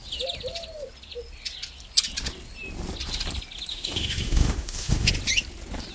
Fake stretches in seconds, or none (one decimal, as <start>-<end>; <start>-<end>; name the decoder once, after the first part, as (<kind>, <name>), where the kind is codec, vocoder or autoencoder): 3.7-5.1 (autoencoder, DAC-VAE)